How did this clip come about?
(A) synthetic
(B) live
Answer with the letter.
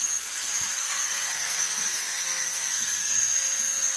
A